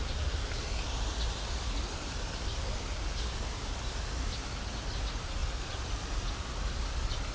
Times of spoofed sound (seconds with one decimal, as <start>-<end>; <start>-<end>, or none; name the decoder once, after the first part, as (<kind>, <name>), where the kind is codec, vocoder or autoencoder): 5.4-6.3 (vocoder, BigVGAN v2)